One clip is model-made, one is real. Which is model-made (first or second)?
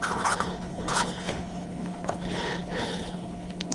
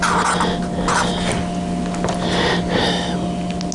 first